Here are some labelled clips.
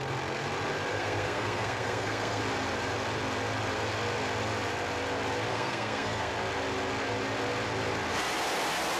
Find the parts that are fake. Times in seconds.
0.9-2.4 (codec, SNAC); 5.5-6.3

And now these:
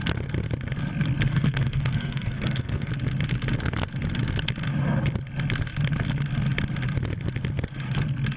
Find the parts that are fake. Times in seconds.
1.3-2.9 (codec, SNAC)